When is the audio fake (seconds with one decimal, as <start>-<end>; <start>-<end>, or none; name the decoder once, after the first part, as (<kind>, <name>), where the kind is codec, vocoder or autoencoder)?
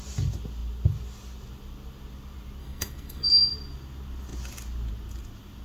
2.6-3.3 (codec, SNAC)